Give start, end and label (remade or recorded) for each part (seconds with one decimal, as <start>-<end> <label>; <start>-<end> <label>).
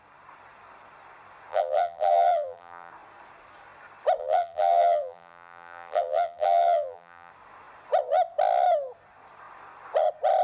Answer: 0.0-1.5 recorded; 1.5-2.9 remade; 2.9-4.2 recorded; 4.2-7.3 remade; 7.3-10.4 recorded